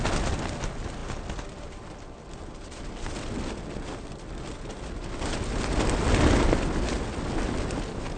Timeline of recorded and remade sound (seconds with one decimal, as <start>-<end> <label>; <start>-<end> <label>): 0.0-8.2 recorded